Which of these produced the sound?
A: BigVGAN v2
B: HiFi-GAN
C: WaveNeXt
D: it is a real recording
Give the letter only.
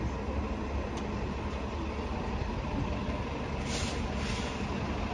D